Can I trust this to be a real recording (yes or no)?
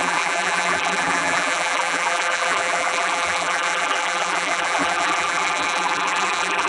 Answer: no